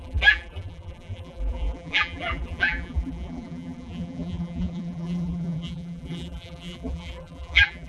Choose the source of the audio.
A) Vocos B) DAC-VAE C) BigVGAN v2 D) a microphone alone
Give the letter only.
C